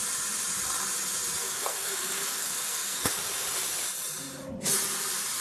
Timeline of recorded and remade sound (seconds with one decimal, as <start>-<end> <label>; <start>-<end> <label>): 0.0-1.4 recorded; 1.4-3.1 remade; 3.1-5.4 recorded